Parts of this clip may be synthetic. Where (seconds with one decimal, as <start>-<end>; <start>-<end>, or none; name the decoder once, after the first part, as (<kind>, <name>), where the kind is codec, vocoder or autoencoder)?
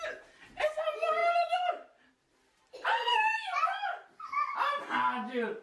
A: 1.2-2.1 (vocoder, BigVGAN v2)